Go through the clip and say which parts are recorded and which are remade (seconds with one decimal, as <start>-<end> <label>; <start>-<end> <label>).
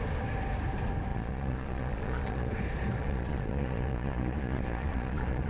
0.0-1.1 recorded; 1.1-2.5 remade; 2.5-3.0 recorded; 3.0-5.5 remade